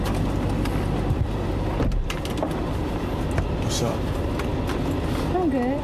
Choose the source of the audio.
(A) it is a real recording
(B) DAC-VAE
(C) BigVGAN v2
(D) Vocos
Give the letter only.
A